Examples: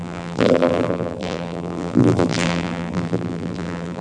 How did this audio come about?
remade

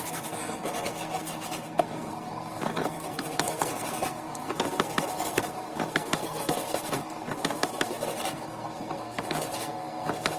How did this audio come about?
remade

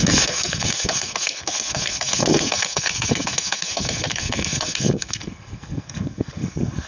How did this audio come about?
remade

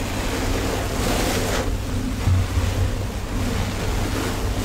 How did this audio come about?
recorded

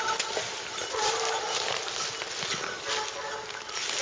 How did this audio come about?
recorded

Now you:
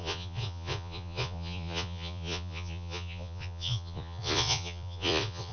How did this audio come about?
remade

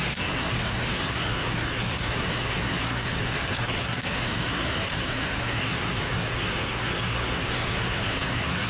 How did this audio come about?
remade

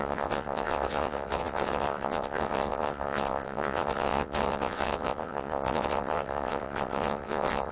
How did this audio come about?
remade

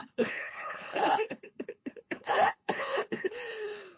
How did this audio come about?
remade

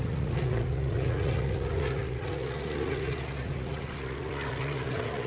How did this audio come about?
remade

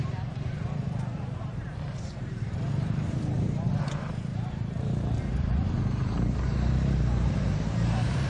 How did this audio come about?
remade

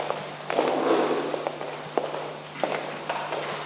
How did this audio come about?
recorded